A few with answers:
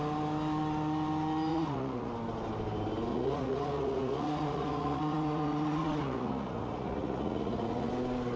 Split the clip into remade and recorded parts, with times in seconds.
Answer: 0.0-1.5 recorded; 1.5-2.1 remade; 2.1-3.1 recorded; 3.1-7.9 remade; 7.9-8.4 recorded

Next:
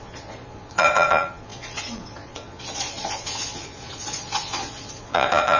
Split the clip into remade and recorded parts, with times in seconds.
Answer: 0.0-5.6 remade

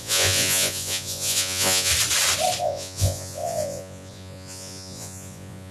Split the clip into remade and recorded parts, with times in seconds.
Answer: 0.0-1.9 remade; 1.9-2.6 recorded; 2.6-5.7 remade